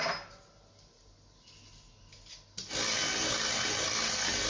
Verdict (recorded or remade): recorded